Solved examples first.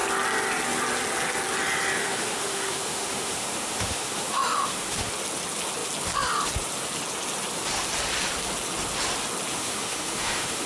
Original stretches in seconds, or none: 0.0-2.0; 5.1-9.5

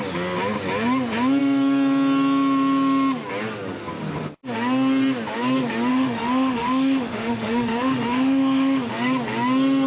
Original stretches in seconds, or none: 0.0-5.9; 8.9-9.9

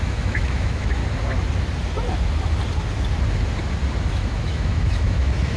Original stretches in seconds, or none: 1.0-4.1

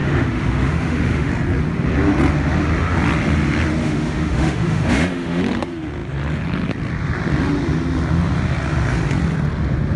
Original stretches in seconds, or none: 1.3-3.8; 5.4-10.0

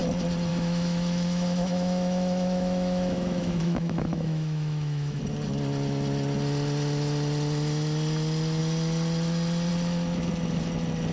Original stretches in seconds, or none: 0.0-0.5; 5.2-11.1

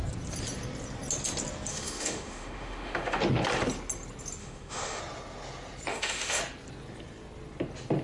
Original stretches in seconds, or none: 0.0-1.7; 3.2-4.4; 5.0-5.9; 6.4-8.0